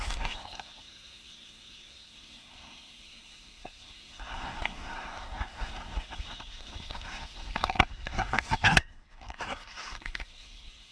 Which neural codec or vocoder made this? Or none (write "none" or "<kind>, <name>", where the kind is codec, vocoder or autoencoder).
codec, SNAC